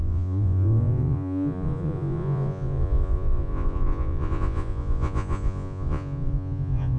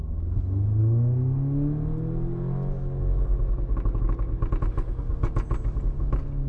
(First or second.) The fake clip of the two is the first